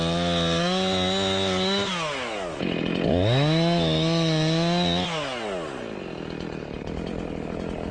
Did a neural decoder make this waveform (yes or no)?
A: no